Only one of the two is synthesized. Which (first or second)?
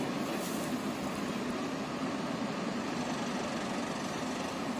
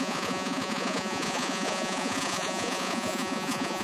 second